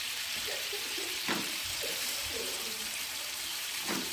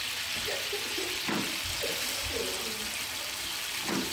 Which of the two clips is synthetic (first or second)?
first